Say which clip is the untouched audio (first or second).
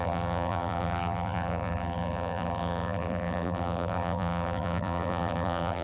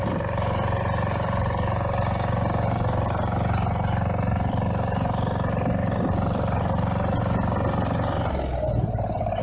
second